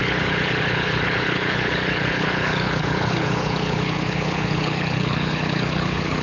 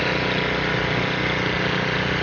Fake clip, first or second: first